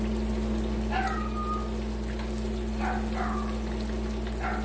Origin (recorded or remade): recorded